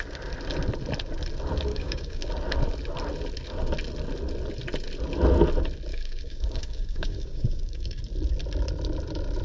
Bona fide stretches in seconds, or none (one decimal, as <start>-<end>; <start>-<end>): 0.0-1.7; 2.3-5.9; 8.0-9.4